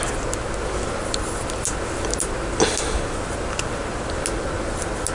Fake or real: real